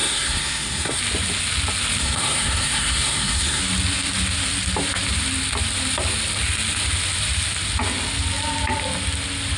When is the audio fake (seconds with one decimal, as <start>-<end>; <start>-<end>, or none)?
0.0-1.0; 2.0-3.6